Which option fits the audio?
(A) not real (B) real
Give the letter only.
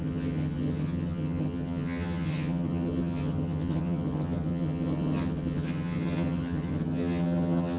A